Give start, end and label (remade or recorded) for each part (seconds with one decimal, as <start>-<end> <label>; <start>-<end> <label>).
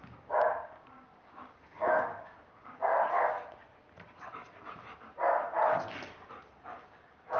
0.0-2.9 remade; 2.9-6.6 recorded; 6.6-7.4 remade